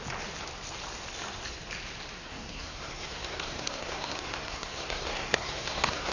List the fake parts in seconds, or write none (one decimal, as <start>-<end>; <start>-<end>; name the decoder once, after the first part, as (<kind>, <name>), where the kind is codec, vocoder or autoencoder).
2.2-6.1 (codec, SNAC)

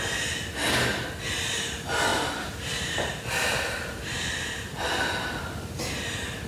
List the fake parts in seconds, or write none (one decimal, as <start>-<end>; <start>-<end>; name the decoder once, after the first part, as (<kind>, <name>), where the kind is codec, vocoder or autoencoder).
2.1-4.8 (vocoder, BigVGAN v2)

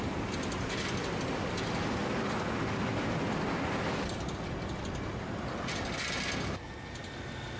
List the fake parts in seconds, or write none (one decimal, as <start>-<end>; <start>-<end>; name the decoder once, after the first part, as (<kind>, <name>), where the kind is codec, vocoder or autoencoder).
none

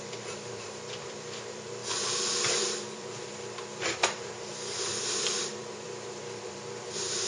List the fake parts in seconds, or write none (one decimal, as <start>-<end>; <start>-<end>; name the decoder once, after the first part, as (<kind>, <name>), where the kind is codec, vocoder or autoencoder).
0.0-1.8 (vocoder, BigVGAN v2); 2.8-4.5; 5.4-7.3

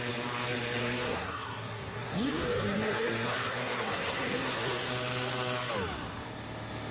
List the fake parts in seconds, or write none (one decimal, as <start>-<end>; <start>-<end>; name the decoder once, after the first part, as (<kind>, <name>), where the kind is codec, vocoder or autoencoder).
0.8-4.9 (codec, SNAC)